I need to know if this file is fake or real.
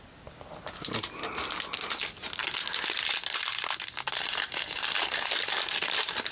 real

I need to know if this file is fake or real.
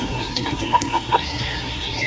fake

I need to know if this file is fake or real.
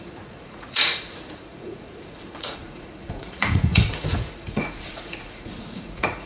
fake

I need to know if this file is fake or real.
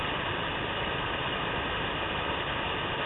real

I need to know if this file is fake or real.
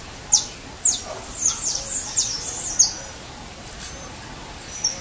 real